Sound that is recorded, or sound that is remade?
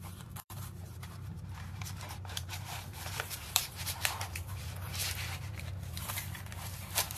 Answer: remade